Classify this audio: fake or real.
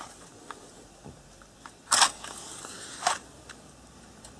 fake